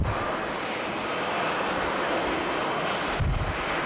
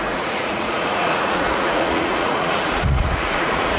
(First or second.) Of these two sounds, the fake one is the second